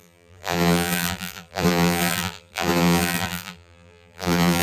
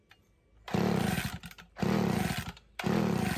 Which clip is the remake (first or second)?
first